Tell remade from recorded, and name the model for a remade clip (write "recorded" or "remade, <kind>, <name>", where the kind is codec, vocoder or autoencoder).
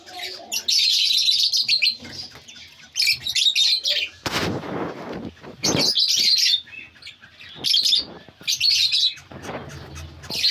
recorded